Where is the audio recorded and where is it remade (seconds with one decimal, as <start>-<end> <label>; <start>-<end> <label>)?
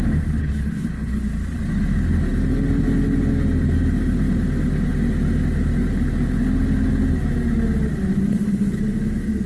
0.0-0.4 recorded; 0.4-1.2 remade; 1.2-8.3 recorded; 8.3-8.8 remade; 8.8-9.5 recorded